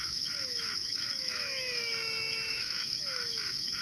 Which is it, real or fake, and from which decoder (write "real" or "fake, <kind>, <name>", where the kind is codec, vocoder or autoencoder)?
fake, autoencoder, DAC-VAE